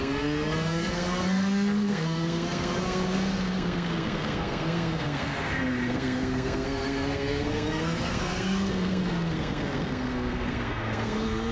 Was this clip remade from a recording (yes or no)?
yes